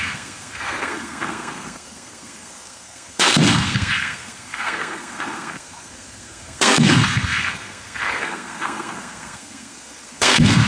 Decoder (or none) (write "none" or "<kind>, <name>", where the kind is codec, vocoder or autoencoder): codec, SNAC